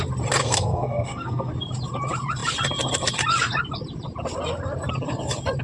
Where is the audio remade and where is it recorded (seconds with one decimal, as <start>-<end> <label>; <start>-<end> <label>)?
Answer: 0.0-0.4 recorded; 0.4-1.5 remade; 1.5-5.6 recorded